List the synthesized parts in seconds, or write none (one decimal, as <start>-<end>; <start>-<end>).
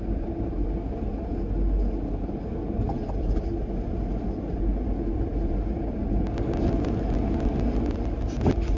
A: none